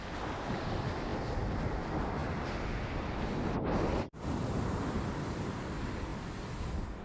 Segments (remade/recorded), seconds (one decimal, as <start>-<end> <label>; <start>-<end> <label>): 0.0-7.0 recorded